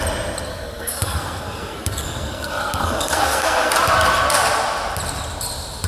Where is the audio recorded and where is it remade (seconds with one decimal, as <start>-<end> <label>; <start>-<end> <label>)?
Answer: 0.0-0.5 recorded; 0.5-3.7 remade; 3.7-5.9 recorded